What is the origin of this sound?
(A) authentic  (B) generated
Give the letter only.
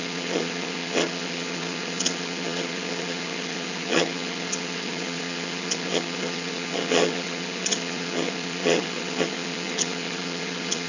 B